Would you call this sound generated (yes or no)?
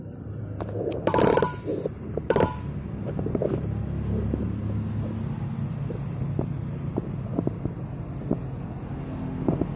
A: no